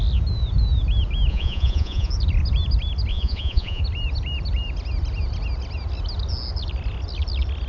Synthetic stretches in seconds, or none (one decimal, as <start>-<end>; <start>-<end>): 1.3-2.1; 3.1-3.8